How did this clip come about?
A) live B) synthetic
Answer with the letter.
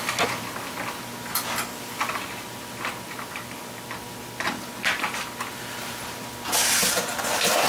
A